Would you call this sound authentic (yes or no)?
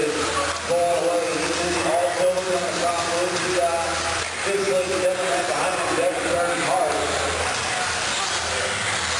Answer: yes